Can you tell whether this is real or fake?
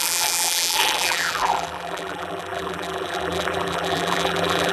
fake